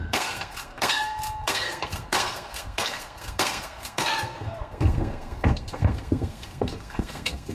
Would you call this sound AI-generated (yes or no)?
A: yes